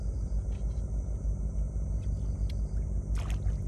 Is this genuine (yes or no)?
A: yes